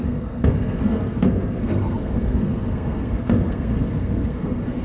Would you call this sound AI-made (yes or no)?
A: yes